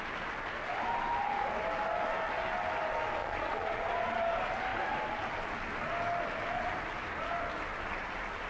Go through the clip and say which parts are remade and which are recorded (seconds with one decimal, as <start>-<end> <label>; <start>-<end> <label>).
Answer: 0.0-3.2 recorded; 3.2-3.8 remade; 3.8-8.5 recorded